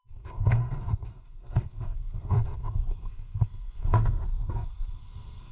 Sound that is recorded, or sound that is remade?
remade